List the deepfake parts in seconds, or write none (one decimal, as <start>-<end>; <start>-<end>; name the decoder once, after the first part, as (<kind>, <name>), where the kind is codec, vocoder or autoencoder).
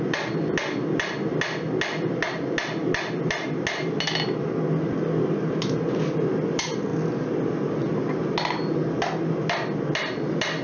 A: none